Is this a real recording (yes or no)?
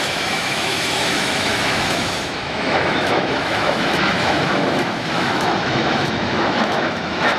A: no